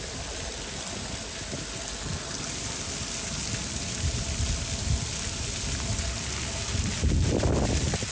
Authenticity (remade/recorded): recorded